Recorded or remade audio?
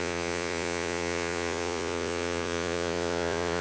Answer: remade